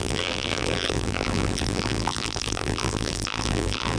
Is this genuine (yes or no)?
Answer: no